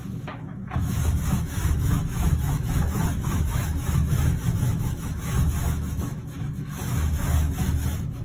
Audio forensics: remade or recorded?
remade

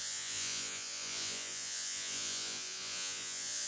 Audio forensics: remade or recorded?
remade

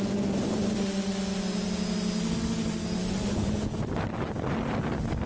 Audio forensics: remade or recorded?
recorded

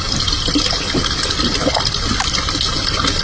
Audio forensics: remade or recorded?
recorded